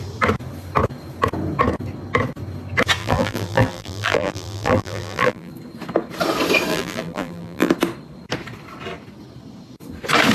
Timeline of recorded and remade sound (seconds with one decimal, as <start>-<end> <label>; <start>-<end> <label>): 0.0-3.0 recorded; 3.0-5.5 remade; 5.5-6.7 recorded; 6.7-7.7 remade; 7.7-10.3 recorded